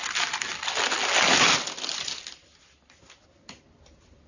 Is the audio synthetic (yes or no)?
no